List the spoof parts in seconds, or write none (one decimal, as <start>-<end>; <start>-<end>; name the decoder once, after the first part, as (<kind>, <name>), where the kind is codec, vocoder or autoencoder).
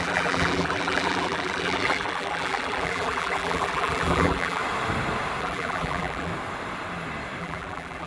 0.0-4.6 (vocoder, BigVGAN v2); 5.4-6.3; 7.4-8.1